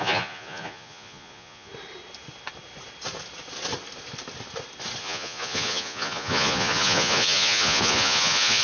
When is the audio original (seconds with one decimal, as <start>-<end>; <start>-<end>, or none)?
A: 1.7-5.0

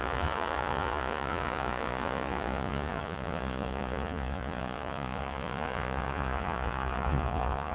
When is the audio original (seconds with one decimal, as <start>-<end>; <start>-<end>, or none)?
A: none

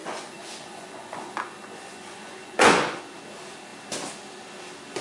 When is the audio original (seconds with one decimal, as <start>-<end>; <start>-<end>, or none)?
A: 3.0-5.0

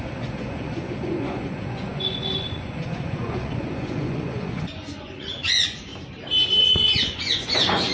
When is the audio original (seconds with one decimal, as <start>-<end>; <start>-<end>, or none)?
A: 5.9-6.6

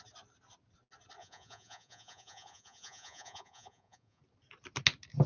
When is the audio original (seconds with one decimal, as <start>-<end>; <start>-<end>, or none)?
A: 0.0-1.2; 4.2-5.3